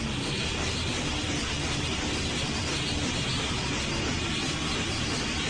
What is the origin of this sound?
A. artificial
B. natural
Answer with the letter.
B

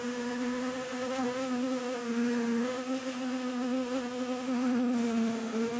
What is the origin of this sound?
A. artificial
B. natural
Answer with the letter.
A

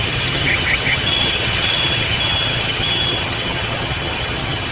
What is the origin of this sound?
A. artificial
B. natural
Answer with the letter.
A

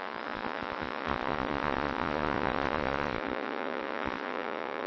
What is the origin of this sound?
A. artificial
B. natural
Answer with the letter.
A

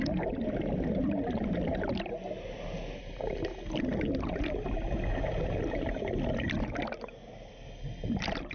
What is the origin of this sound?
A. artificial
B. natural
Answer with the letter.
B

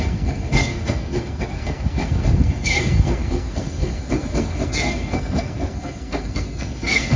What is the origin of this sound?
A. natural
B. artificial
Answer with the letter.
B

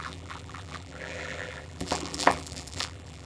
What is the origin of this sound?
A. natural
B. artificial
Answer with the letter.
B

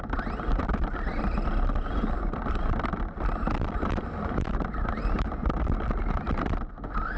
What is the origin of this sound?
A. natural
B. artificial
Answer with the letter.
A